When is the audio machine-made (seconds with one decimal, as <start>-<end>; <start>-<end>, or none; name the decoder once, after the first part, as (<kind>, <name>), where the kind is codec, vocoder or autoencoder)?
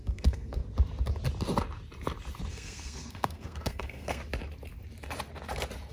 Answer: 0.0-0.6 (codec, SNAC); 2.5-4.2